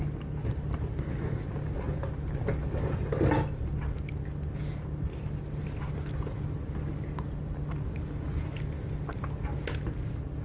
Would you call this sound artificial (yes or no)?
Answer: no